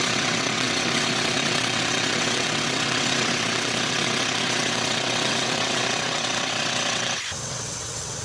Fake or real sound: fake